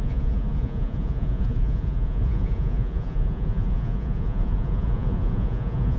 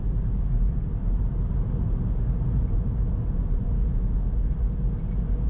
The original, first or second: second